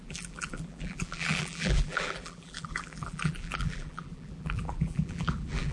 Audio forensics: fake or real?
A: fake